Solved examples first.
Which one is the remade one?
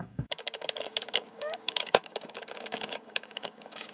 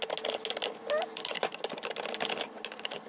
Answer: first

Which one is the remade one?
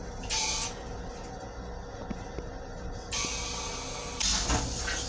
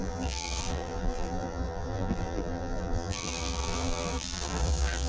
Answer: second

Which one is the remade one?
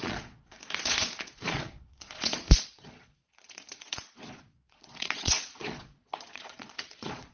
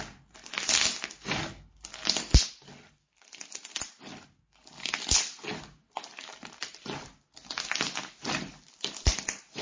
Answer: first